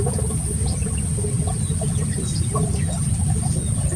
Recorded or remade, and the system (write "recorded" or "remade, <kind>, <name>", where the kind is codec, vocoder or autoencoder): recorded